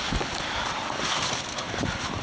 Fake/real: real